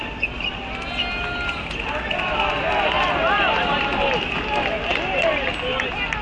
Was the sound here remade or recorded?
recorded